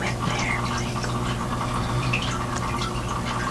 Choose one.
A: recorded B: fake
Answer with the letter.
A